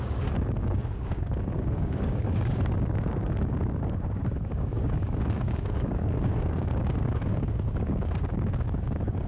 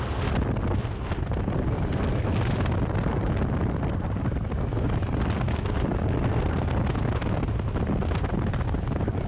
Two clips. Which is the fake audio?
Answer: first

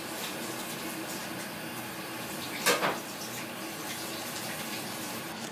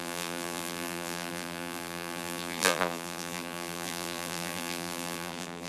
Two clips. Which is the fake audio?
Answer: second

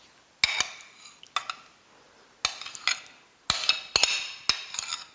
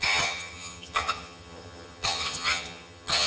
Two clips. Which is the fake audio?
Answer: second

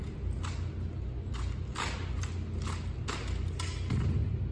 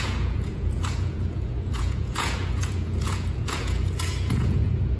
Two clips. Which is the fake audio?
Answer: second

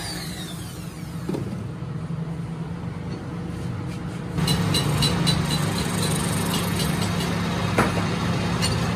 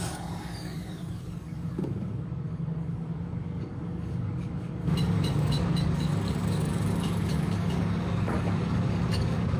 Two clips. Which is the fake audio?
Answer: second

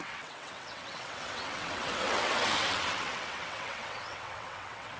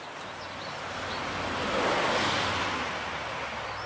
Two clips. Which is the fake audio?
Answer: first